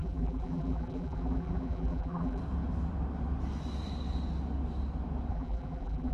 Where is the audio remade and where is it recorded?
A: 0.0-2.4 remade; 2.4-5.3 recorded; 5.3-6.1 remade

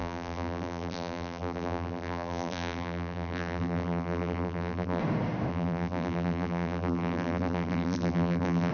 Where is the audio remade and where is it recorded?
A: 0.0-5.0 remade; 5.0-5.5 recorded; 5.5-8.7 remade

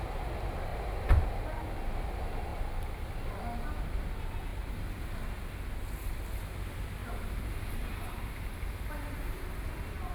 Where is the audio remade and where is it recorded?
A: 0.0-0.7 recorded; 0.7-1.4 remade; 1.4-4.5 recorded; 4.5-5.0 remade; 5.0-10.1 recorded

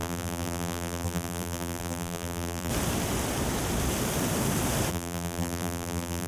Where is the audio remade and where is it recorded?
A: 0.0-2.7 remade; 2.7-4.9 recorded; 4.9-6.3 remade